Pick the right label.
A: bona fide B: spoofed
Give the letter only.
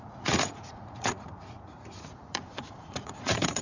B